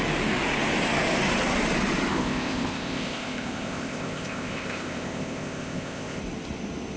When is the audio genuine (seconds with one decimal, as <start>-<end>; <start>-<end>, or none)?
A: 0.0-2.1; 6.2-7.0